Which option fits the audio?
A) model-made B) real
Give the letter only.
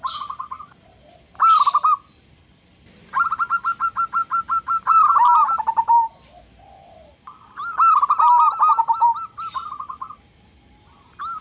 B